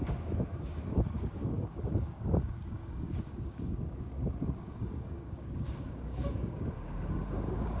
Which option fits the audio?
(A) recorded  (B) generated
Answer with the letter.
B